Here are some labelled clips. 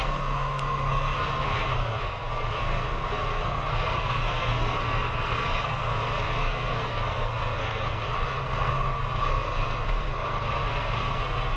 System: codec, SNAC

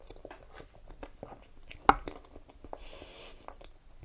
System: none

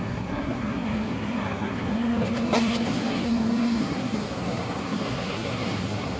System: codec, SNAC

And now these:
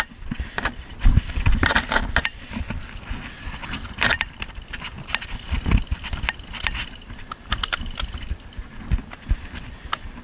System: none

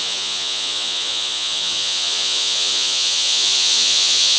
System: vocoder, Vocos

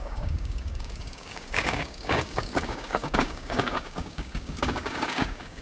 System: codec, DAC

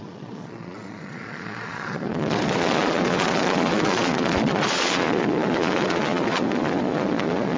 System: vocoder, Vocos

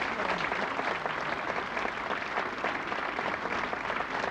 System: none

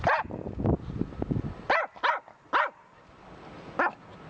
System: none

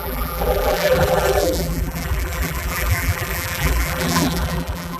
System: vocoder, BigVGAN v2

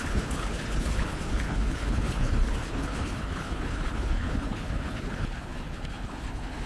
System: codec, HILCodec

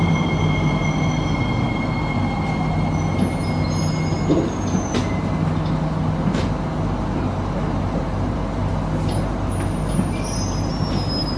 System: none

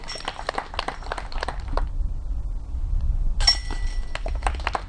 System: none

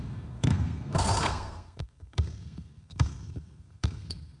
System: codec, SNAC